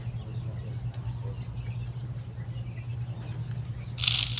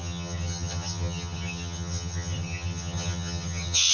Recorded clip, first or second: first